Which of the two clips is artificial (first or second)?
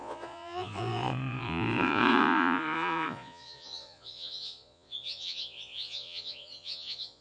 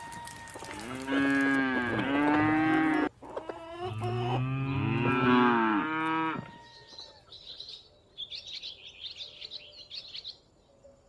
first